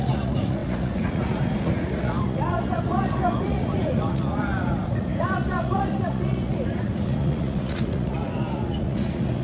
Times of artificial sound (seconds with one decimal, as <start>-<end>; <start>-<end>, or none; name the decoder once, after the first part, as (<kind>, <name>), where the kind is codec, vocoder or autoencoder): 0.0-9.4 (vocoder, Vocos)